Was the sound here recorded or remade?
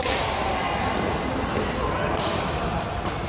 recorded